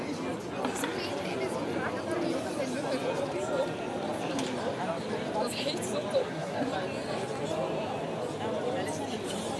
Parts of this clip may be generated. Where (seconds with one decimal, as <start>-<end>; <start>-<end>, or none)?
6.2-6.7